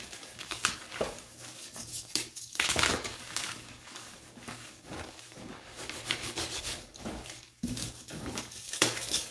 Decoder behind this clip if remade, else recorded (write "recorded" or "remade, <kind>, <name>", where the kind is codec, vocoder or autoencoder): remade, codec, DAC